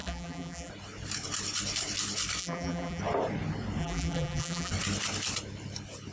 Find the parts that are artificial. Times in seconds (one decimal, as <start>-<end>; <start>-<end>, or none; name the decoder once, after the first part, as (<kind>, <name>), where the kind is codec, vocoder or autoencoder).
0.0-0.7 (vocoder, BigVGAN v2); 2.4-3.0; 3.8-4.7